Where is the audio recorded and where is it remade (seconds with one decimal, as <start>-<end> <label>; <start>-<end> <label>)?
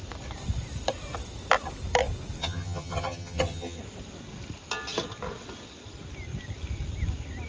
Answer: 0.0-2.4 recorded; 2.4-3.8 remade; 3.8-7.5 recorded